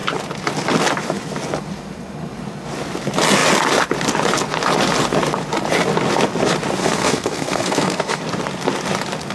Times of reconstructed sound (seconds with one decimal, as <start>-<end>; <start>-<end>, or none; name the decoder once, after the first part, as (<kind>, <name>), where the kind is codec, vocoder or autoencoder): 6.8-8.2 (codec, SNAC)